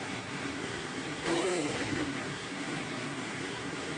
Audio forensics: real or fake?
fake